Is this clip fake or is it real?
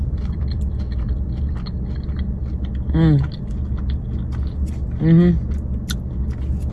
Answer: real